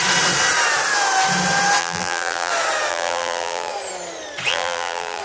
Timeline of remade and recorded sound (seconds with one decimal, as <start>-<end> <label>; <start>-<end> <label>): 0.0-1.8 recorded; 1.8-2.5 remade; 2.5-2.9 recorded; 2.9-3.7 remade; 3.7-4.5 recorded; 4.5-5.2 remade